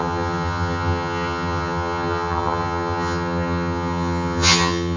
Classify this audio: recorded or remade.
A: remade